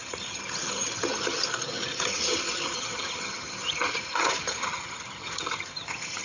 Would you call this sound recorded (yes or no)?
no